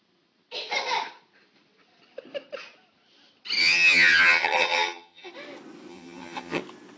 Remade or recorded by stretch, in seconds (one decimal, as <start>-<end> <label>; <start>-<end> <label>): 0.0-3.6 recorded; 3.6-5.3 remade; 5.3-5.9 recorded; 5.9-6.6 remade; 6.6-7.0 recorded